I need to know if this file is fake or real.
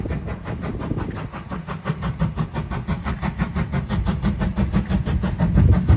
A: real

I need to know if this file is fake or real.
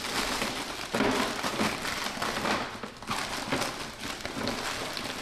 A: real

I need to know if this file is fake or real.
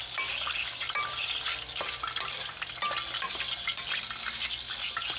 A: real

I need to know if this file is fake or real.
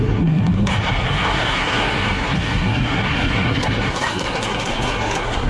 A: fake